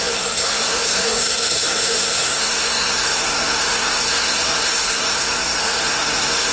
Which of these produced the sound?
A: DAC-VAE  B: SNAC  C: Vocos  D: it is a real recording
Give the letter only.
B